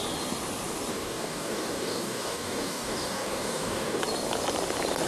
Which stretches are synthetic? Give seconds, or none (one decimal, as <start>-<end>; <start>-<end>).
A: 0.9-4.0

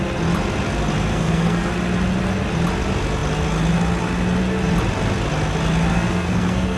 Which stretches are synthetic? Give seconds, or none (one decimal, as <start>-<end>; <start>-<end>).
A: 1.1-1.7; 5.9-6.8

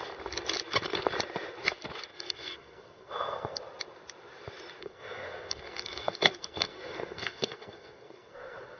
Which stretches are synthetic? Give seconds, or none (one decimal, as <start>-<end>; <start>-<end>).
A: 2.1-3.6; 4.8-8.8

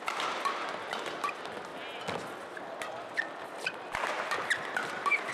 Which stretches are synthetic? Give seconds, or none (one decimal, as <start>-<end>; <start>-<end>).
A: none

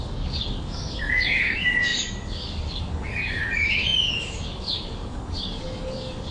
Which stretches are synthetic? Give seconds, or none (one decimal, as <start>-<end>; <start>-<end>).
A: 0.0-6.3

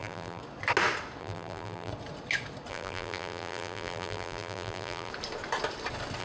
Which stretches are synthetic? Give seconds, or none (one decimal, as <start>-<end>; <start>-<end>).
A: 0.0-0.4; 1.2-1.9; 2.7-5.1

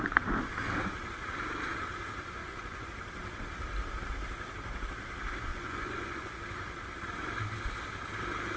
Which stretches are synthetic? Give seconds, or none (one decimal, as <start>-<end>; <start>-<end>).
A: 2.4-2.9; 5.5-6.4